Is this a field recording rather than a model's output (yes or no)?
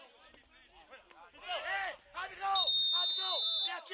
yes